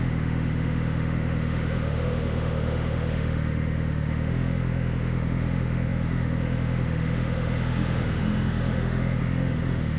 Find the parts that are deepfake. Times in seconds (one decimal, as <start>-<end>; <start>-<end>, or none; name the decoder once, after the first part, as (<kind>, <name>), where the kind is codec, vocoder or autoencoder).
0.0-10.0 (autoencoder, DAC-VAE)

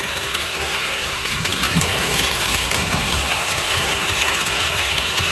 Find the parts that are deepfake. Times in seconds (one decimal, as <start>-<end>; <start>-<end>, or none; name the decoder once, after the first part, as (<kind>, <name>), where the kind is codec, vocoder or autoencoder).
0.0-5.3 (codec, SNAC)

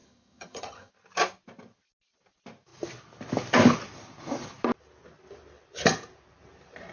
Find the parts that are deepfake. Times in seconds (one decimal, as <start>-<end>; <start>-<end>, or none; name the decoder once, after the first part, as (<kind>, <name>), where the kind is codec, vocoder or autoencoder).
0.0-0.9 (vocoder, HiFi-GAN)